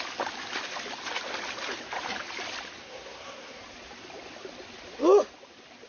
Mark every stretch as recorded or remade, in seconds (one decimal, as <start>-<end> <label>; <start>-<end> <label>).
0.0-2.8 recorded; 2.8-3.6 remade; 3.6-5.9 recorded